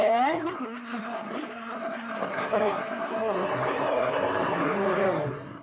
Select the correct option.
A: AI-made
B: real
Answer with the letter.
A